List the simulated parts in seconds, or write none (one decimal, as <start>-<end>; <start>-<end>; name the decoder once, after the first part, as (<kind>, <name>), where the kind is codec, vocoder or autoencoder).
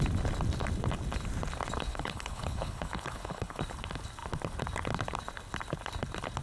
1.9-3.6 (codec, HILCodec)